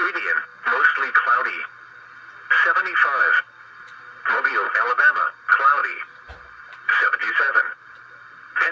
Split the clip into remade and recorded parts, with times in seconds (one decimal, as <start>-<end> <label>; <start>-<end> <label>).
0.0-5.8 recorded; 5.8-8.0 remade; 8.0-8.7 recorded